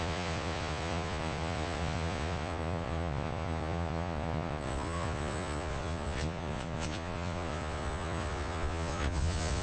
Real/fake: fake